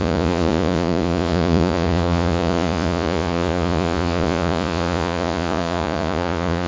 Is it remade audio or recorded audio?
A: remade